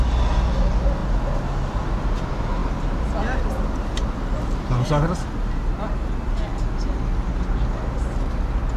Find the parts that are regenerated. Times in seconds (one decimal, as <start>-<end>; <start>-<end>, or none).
none